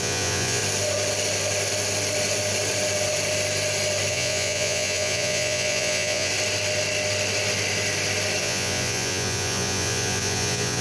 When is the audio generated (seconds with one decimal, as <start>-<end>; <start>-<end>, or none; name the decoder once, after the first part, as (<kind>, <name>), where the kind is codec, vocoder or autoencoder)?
0.0-0.6 (vocoder, Vocos); 4.1-6.3; 8.4-10.8